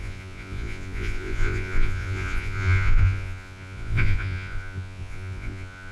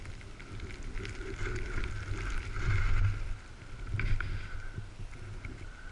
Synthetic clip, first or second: first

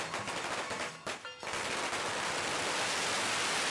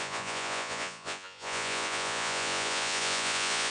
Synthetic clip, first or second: second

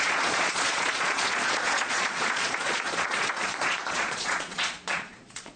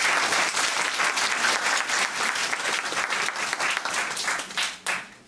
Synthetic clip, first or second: first